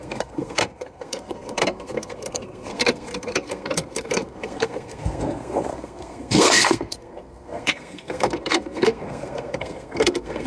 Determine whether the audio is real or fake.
fake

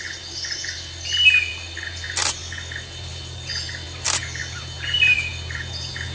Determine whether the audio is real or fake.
real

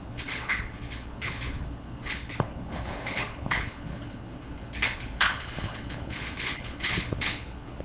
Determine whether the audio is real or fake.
fake